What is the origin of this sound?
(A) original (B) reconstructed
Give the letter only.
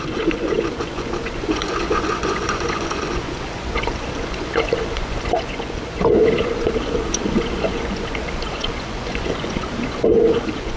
B